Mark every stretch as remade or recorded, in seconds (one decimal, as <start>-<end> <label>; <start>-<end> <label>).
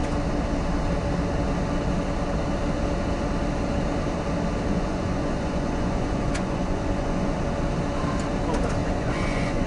0.0-4.7 recorded; 4.7-7.4 remade; 7.4-8.8 recorded; 8.8-9.7 remade